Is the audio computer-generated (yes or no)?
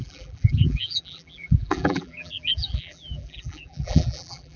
yes